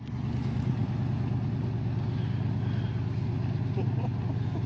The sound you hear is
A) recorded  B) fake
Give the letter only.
A